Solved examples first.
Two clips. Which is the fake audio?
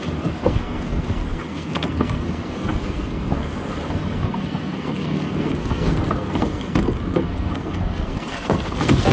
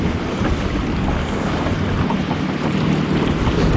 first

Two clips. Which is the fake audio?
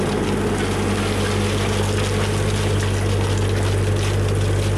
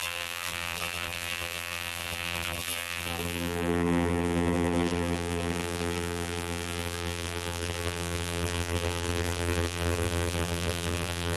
second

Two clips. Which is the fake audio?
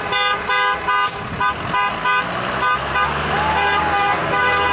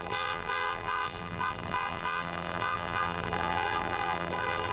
second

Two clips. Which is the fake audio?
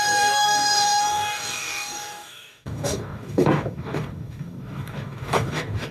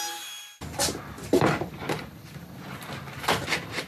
first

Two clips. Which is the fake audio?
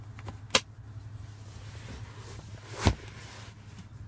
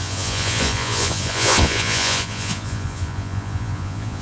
second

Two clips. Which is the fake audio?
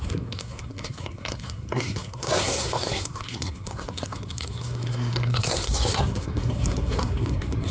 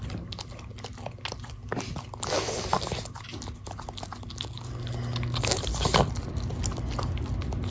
first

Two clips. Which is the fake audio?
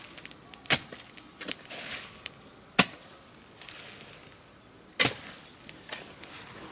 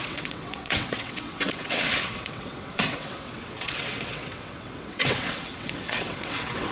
second